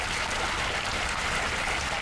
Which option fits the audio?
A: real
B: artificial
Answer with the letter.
A